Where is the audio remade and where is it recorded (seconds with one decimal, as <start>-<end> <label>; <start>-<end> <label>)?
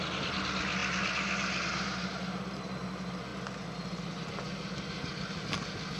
0.0-6.0 recorded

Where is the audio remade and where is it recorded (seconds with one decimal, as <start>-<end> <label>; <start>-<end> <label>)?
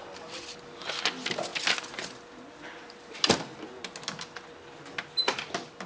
0.0-5.9 recorded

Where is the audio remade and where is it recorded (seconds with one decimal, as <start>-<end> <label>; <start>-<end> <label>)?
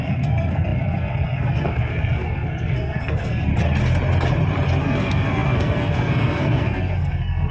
0.0-3.5 remade; 3.5-4.8 recorded; 4.8-7.5 remade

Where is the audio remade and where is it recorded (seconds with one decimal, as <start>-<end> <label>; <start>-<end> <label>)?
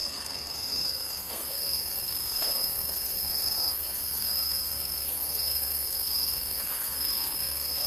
0.0-7.9 remade